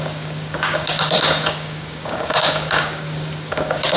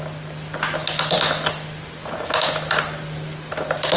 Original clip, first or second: second